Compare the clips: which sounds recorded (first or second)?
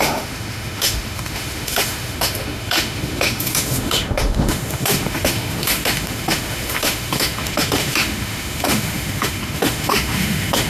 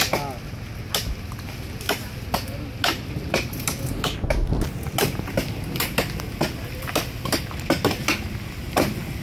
second